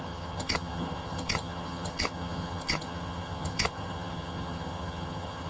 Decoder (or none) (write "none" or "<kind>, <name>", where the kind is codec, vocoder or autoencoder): vocoder, HiFi-GAN